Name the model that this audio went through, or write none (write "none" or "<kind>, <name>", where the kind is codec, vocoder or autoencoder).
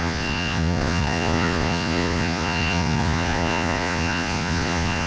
vocoder, Vocos